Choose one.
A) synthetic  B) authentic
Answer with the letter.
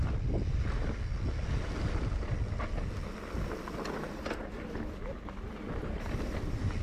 B